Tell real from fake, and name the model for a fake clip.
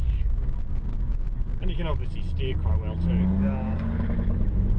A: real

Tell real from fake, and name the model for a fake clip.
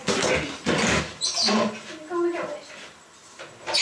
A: real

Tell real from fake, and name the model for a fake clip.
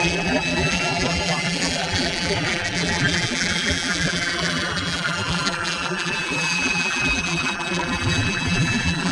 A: fake, vocoder, BigVGAN v2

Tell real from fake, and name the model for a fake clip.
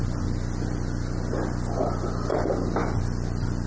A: real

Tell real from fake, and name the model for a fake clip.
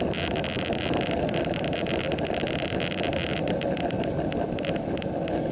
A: real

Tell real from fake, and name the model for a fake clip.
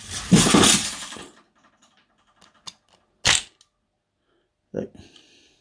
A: real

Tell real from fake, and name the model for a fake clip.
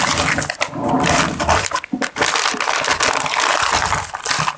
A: real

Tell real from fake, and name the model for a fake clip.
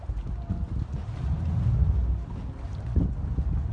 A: real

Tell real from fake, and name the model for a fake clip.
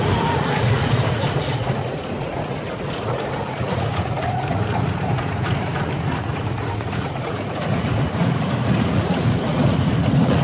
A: fake, vocoder, Vocos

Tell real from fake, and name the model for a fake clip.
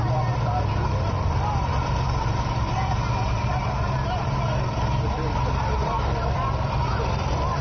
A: fake, vocoder, BigVGAN v2